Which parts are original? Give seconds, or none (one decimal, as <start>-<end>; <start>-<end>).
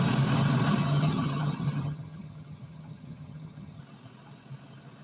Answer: 0.0-0.8; 3.8-5.0